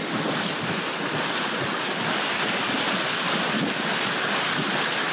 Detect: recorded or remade recorded